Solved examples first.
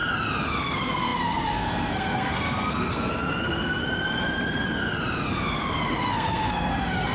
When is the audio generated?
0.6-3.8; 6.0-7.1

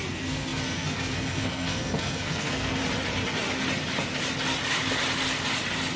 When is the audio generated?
0.0-2.8

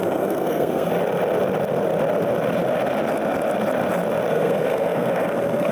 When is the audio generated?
0.0-0.9; 4.3-5.7

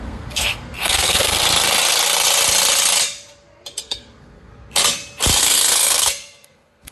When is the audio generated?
0.0-1.4; 3.8-4.5; 5.4-6.9

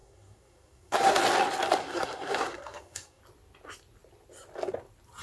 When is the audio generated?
0.0-1.2; 1.8-3.2

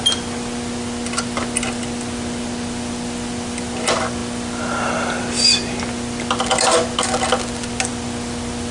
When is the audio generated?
none

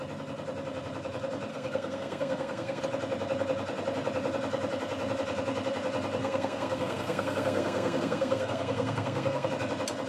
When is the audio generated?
1.5-2.8; 6.2-9.5